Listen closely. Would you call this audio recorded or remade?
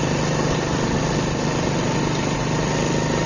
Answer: recorded